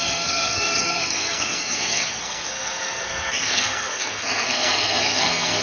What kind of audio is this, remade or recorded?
remade